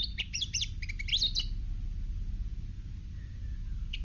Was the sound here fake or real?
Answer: real